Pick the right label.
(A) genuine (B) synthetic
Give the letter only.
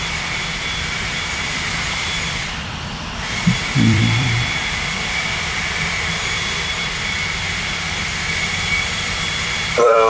B